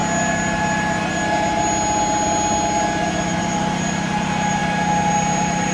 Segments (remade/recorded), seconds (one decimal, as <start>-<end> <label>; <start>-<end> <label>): 0.0-3.4 recorded; 3.4-4.6 remade; 4.6-5.1 recorded; 5.1-5.7 remade